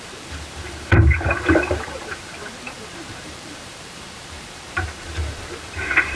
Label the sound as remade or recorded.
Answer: remade